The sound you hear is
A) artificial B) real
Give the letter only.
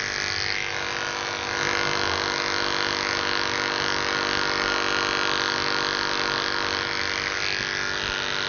B